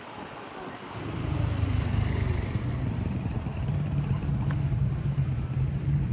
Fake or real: fake